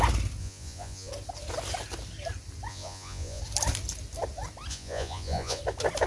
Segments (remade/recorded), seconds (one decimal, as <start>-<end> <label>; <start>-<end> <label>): 0.0-0.4 recorded; 0.4-1.1 remade; 1.1-2.7 recorded; 2.7-3.4 remade; 3.4-4.7 recorded; 4.7-5.6 remade; 5.6-6.1 recorded